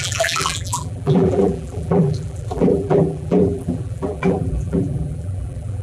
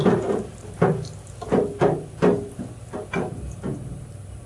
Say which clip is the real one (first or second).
second